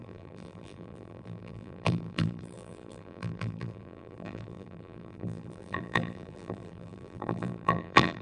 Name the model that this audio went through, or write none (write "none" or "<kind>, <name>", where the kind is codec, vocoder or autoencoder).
vocoder, BigVGAN v2